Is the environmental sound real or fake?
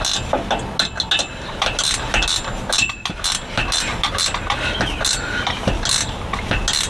real